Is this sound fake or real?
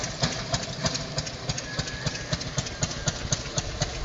real